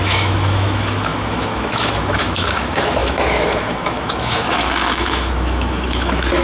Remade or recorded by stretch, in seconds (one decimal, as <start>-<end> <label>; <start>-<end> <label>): 0.0-6.4 remade